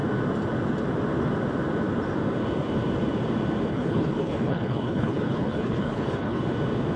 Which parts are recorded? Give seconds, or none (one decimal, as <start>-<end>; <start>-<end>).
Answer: 0.0-3.7; 6.4-7.0